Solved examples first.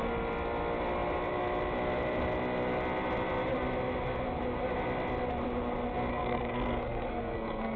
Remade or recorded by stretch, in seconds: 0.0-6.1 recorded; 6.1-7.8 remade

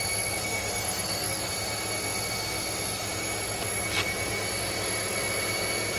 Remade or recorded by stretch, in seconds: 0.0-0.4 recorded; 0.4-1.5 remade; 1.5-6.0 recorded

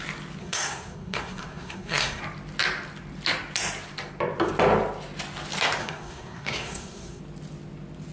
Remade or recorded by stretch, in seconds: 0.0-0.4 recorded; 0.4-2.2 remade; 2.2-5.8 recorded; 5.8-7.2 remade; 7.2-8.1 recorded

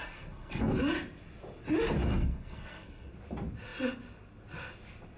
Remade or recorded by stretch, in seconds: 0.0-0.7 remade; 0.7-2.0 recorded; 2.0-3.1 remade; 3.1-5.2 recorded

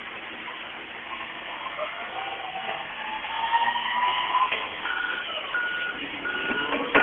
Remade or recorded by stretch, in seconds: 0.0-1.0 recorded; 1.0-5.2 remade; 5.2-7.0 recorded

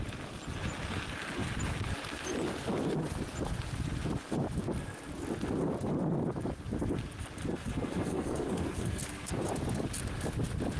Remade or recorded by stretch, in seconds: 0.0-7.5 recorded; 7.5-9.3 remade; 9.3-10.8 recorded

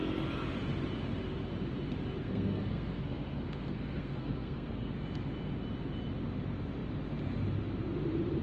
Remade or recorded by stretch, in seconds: 0.0-2.2 recorded; 2.2-4.9 remade; 4.9-8.4 recorded

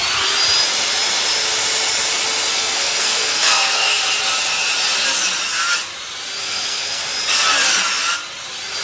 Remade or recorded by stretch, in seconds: 0.0-2.5 recorded; 2.5-4.0 remade; 4.0-6.4 recorded; 6.4-7.0 remade; 7.0-8.8 recorded